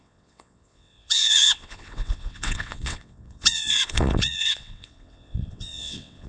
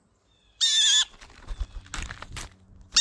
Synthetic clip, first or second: first